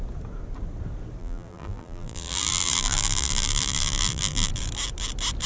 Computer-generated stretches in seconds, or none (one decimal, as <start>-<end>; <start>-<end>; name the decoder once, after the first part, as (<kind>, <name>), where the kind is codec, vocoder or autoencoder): 1.2-4.5 (vocoder, BigVGAN v2)